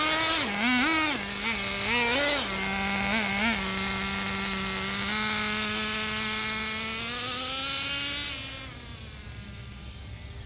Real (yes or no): yes